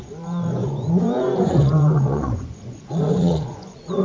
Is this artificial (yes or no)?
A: yes